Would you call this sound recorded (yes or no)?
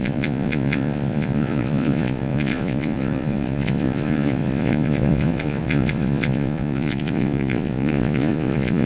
no